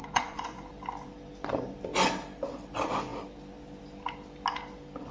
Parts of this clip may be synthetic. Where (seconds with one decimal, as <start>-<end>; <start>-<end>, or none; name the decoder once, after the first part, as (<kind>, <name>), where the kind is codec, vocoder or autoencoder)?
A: 0.0-0.7 (vocoder, Vocos)